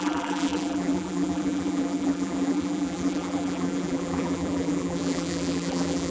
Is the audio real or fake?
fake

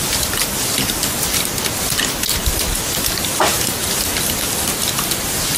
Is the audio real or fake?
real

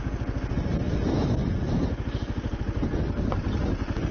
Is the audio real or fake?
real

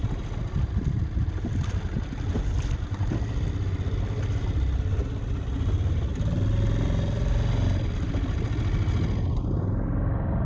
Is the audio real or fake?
real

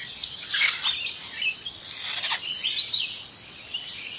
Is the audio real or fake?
real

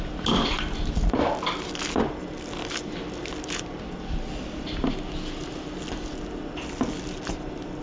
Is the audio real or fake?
real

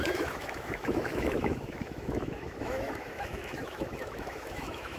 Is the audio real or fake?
fake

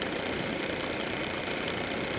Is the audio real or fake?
fake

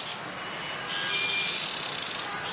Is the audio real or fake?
real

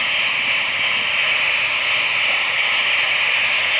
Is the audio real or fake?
real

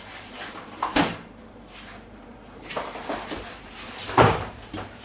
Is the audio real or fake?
fake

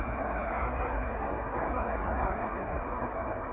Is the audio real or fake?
fake